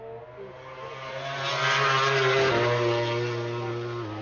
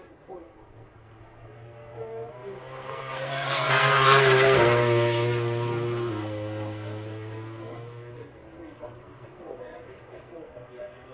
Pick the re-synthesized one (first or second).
second